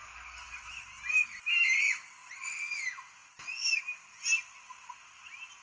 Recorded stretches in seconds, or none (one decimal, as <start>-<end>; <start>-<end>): 0.0-5.6